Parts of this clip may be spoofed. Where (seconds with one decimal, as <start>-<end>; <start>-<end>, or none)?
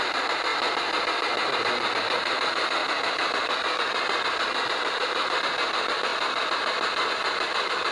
0.0-0.5; 1.6-7.9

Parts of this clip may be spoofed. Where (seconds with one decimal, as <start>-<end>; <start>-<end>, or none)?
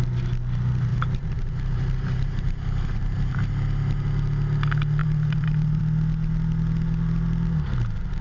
0.9-3.5; 5.0-5.8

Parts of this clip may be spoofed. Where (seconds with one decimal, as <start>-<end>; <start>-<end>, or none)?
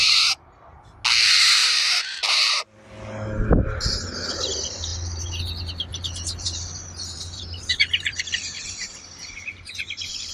1.6-2.6; 4.9-5.4; 5.9-10.3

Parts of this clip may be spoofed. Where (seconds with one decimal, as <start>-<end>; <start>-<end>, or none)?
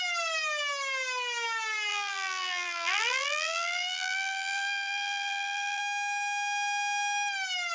1.9-5.8